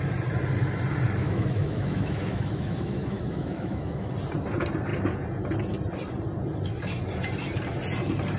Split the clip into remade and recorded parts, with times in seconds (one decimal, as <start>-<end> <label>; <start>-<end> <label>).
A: 0.0-1.2 recorded; 1.2-4.1 remade; 4.1-8.4 recorded

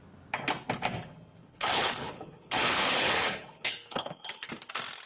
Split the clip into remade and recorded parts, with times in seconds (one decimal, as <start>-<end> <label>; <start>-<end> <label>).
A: 0.0-1.4 recorded; 1.4-4.5 remade; 4.5-5.1 recorded

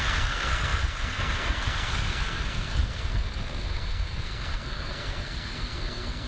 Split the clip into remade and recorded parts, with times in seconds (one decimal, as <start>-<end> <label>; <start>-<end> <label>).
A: 0.0-6.3 remade

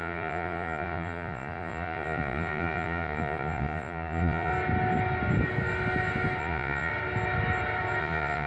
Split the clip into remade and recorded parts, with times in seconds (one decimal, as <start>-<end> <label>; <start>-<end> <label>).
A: 0.0-4.5 remade; 4.5-6.4 recorded; 6.4-6.9 remade; 6.9-8.0 recorded; 8.0-8.5 remade

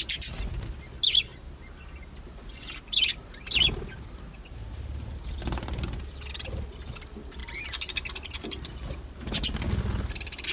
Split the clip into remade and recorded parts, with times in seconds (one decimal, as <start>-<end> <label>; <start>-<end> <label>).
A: 0.0-10.5 recorded

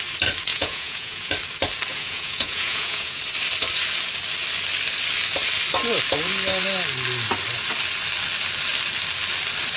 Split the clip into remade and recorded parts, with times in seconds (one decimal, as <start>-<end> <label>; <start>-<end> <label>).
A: 0.0-0.5 recorded; 0.5-1.3 remade; 1.3-1.9 recorded; 1.9-3.2 remade; 3.2-9.8 recorded